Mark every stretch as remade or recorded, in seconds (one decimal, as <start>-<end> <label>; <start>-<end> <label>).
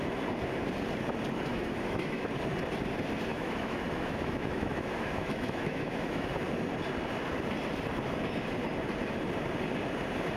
0.0-1.5 recorded; 1.5-2.3 remade; 2.3-3.3 recorded; 3.3-6.3 remade; 6.3-10.4 recorded